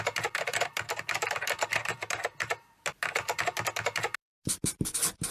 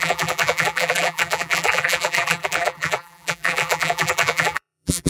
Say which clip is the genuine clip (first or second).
first